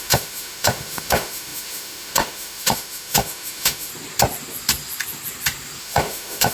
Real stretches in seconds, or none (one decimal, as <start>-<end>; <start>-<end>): 3.9-5.8